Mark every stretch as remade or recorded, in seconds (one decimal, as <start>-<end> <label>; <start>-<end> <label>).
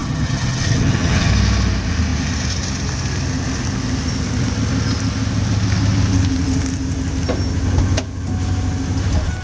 0.0-1.3 remade; 1.3-9.4 recorded